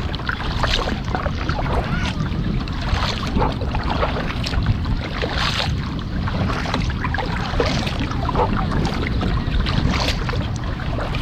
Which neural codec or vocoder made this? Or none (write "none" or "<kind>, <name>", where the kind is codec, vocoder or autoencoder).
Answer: vocoder, BigVGAN v2